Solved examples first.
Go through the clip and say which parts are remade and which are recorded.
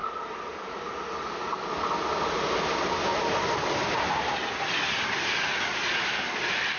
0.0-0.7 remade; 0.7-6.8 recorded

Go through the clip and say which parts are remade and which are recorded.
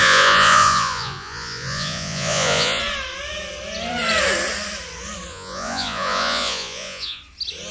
0.0-2.8 remade; 2.8-5.3 recorded; 5.3-7.2 remade; 7.2-7.7 recorded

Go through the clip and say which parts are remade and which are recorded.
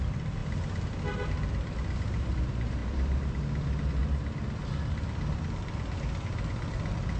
0.0-7.2 recorded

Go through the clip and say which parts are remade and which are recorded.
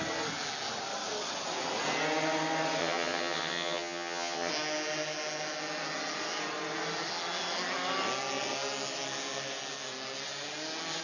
0.0-2.8 recorded; 2.8-4.5 remade; 4.5-11.0 recorded